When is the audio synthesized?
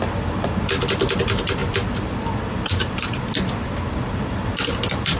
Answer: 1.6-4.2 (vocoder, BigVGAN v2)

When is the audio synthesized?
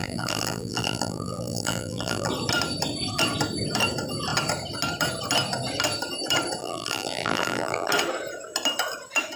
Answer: 0.0-2.3 (vocoder, BigVGAN v2); 6.6-7.9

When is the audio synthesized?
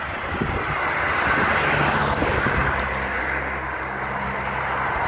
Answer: none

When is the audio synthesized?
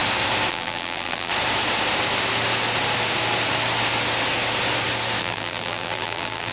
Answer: 0.5-1.3 (vocoder, BigVGAN v2); 5.2-6.5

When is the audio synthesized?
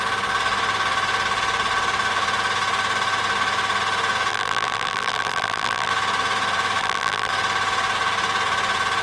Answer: 4.3-5.9 (vocoder, BigVGAN v2); 6.8-7.3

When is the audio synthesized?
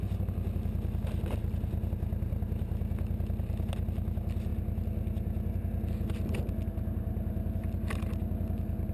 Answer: none